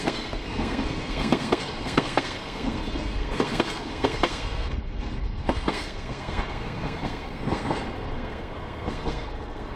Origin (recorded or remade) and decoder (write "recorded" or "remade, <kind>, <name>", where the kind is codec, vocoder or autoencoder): remade, codec, SNAC